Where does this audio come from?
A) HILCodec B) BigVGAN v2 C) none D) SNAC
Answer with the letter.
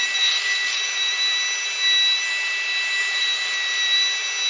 C